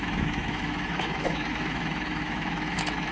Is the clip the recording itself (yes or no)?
no